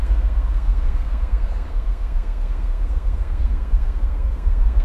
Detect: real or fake fake